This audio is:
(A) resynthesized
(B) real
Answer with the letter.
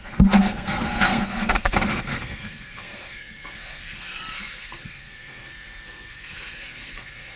A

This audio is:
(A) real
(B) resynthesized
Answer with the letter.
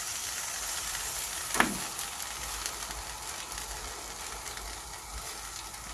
A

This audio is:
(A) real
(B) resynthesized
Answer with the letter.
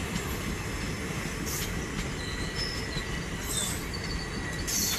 A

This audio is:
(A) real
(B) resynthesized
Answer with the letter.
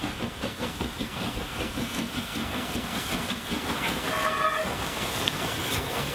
B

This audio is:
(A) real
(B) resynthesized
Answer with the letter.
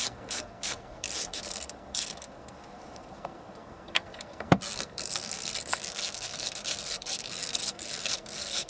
B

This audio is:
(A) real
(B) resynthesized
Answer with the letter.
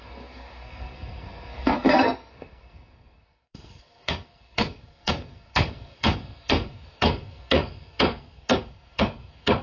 B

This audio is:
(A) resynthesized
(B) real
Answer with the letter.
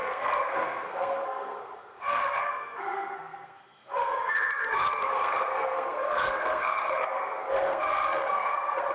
A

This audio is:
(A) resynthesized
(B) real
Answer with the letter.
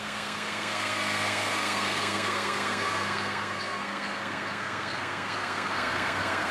A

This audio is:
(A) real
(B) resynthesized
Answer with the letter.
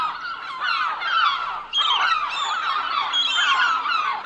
A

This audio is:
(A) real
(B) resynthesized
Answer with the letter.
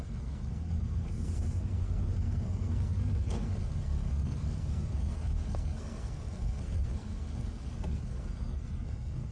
B